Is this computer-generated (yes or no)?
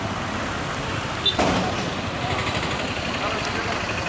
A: no